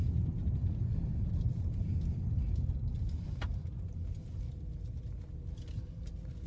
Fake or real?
real